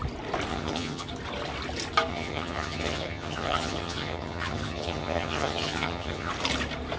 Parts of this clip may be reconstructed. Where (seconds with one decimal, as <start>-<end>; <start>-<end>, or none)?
0.5-1.1; 2.1-6.3